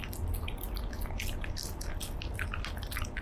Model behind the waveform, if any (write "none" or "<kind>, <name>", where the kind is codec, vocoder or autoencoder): none